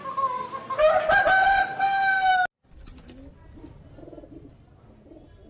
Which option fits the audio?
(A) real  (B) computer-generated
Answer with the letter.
A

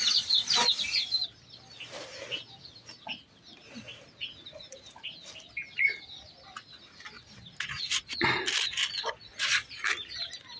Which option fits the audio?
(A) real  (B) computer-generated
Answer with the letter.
A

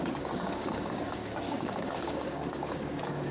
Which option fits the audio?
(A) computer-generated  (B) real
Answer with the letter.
A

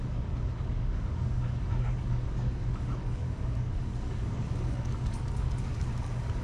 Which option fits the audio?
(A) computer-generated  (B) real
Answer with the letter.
A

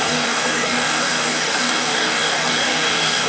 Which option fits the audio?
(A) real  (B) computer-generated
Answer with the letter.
B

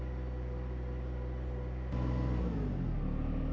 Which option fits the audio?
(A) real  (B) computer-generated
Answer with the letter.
A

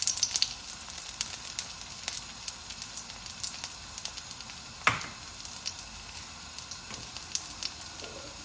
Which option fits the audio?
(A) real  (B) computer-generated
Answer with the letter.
A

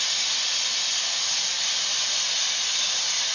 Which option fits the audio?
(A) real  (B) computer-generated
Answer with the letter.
A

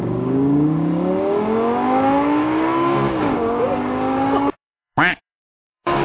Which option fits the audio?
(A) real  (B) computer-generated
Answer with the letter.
B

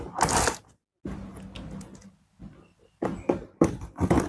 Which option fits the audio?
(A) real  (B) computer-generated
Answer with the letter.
A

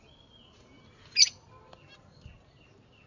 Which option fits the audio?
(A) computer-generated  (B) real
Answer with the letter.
B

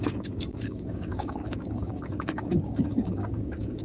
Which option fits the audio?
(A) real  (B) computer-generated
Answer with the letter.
B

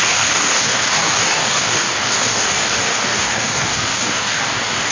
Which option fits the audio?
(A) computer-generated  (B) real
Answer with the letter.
A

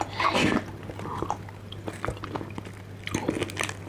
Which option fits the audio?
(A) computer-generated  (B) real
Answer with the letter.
B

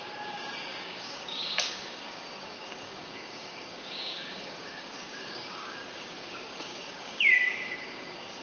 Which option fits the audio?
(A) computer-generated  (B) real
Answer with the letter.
A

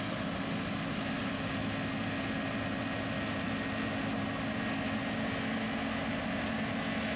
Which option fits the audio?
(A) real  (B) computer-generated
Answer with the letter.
A